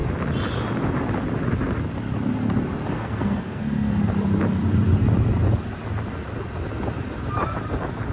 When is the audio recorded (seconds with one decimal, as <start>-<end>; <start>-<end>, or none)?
0.0-2.9; 4.0-8.1